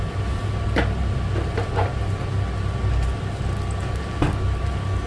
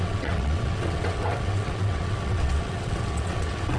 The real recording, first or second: first